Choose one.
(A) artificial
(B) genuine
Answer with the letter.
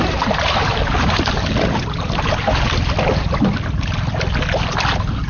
B